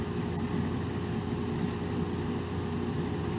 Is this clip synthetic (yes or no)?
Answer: no